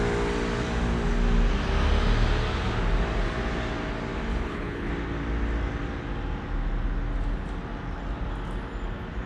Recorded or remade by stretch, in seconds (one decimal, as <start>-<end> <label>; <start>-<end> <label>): 0.0-4.3 recorded; 4.3-4.9 remade; 4.9-9.3 recorded